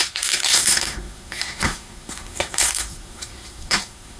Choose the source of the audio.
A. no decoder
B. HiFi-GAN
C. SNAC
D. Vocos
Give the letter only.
C